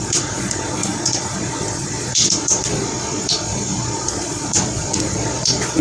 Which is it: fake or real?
fake